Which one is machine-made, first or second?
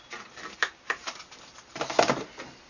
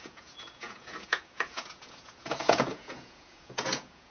second